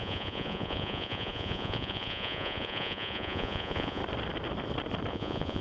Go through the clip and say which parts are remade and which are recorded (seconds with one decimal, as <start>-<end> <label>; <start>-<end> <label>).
0.0-4.0 remade; 4.0-5.1 recorded; 5.1-5.6 remade